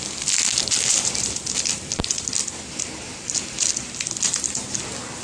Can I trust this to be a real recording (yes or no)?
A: no